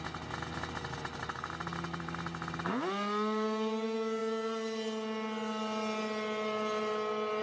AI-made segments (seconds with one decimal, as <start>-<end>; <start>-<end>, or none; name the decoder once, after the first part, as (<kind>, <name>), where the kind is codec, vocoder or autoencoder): none